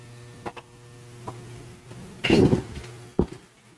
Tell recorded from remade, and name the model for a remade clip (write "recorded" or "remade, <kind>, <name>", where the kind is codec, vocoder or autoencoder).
recorded